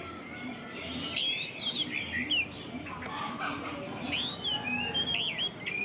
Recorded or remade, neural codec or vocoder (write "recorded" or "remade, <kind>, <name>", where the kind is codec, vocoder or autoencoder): recorded